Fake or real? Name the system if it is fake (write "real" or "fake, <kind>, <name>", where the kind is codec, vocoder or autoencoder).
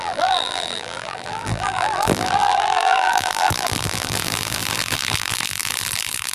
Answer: fake, vocoder, BigVGAN v2